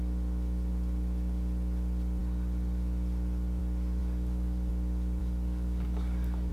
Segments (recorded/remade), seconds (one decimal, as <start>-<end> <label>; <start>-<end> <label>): 0.0-4.0 recorded; 4.0-4.7 remade; 4.7-5.2 recorded; 5.2-6.5 remade